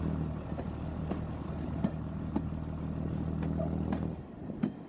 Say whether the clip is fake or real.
real